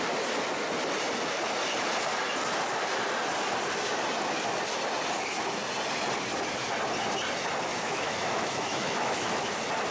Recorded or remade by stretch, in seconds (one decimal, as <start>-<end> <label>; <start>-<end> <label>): 0.0-7.7 recorded; 7.7-9.5 remade; 9.5-9.9 recorded